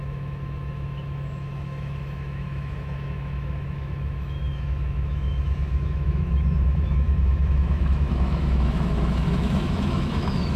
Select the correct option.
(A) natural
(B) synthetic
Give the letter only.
B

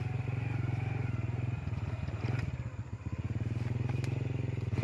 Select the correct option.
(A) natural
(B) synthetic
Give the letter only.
A